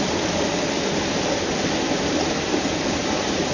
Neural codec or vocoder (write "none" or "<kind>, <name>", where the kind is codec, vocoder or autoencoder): none